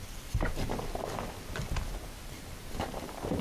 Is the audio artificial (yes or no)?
yes